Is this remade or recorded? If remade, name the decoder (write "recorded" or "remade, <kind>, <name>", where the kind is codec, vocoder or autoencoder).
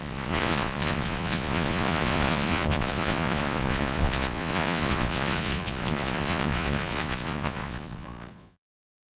remade, vocoder, Vocos